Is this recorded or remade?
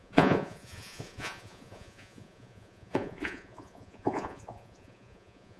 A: remade